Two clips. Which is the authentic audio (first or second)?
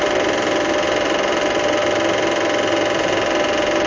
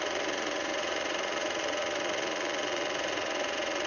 first